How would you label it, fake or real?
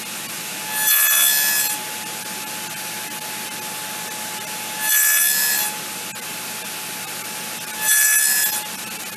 real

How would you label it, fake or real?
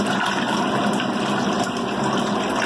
real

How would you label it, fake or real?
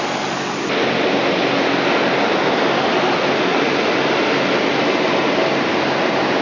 real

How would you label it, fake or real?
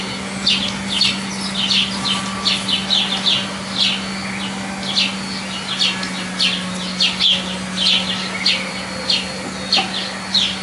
real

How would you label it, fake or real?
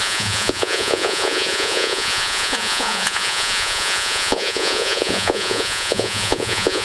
fake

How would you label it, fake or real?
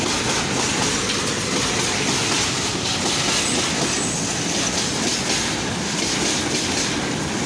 real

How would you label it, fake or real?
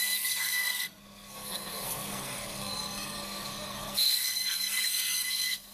fake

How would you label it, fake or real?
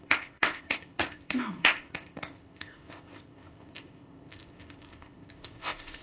fake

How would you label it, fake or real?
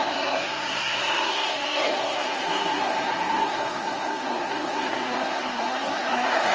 fake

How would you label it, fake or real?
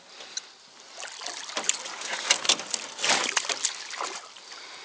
real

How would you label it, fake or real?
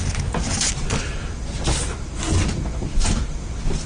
real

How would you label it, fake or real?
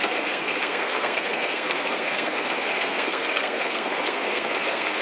fake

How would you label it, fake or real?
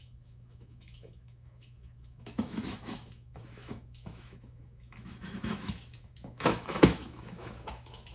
fake